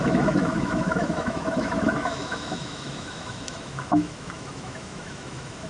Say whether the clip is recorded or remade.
remade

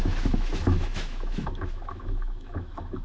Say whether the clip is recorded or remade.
remade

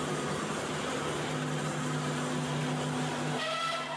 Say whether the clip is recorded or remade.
recorded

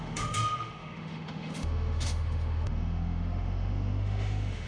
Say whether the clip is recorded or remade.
remade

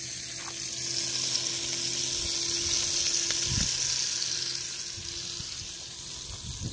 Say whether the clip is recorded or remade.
recorded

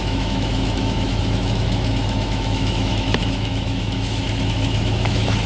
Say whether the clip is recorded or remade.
remade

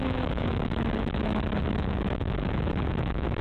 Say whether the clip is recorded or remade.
remade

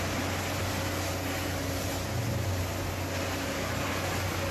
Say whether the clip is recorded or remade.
recorded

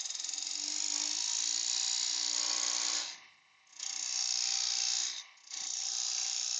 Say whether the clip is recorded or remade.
recorded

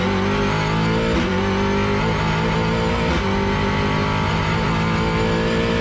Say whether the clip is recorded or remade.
recorded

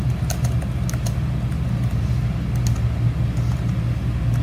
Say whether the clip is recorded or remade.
recorded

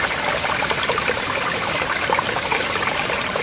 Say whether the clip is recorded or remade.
recorded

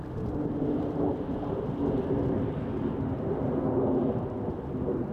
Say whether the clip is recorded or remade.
recorded